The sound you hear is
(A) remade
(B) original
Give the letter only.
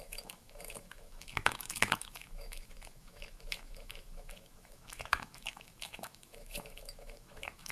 A